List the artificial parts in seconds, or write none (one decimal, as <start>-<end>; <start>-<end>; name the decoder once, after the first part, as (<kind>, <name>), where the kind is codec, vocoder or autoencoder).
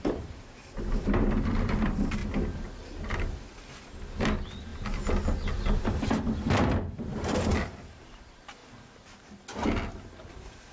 0.0-2.2 (vocoder, BigVGAN v2); 3.5-4.7; 5.9-8.6; 9.9-10.7